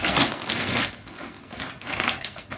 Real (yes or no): no